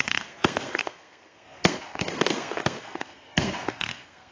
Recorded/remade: remade